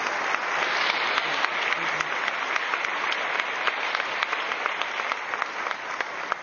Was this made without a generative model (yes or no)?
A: yes